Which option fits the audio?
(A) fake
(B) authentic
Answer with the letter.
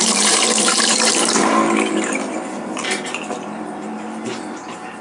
A